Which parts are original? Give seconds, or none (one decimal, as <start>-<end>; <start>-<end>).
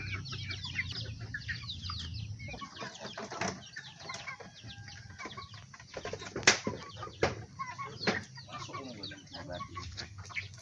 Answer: 0.0-9.7; 10.2-10.6